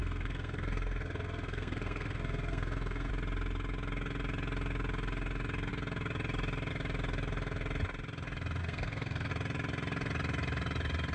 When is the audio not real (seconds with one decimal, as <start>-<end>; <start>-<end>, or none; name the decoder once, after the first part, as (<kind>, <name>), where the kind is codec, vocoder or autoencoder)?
0.0-3.1 (codec, SNAC); 8.6-9.3